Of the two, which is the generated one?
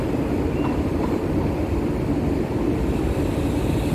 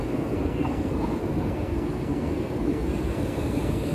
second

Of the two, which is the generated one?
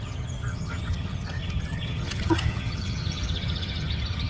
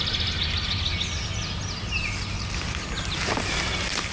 first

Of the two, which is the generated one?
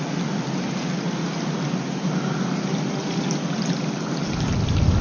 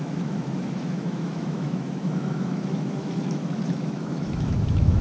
second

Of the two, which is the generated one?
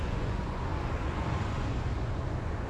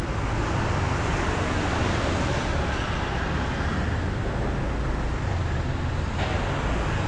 first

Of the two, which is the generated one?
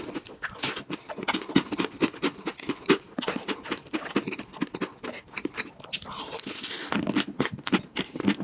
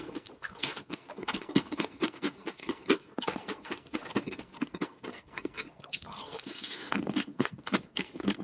second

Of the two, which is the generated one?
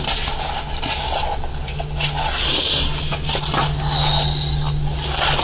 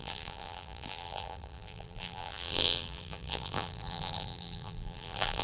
second